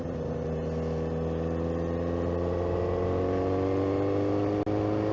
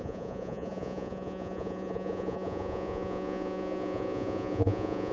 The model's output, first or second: second